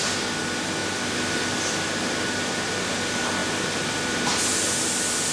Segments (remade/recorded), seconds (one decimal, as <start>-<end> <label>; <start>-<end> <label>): 0.0-5.3 recorded